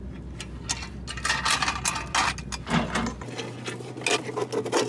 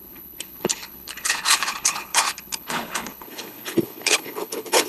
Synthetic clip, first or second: second